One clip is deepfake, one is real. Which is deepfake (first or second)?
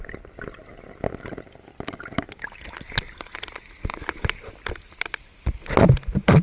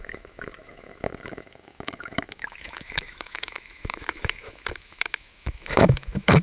second